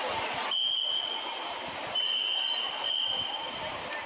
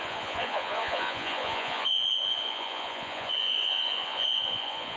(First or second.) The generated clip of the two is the second